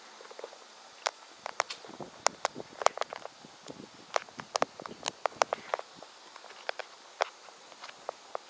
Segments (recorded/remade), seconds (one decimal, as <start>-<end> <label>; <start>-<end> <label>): 0.0-8.5 recorded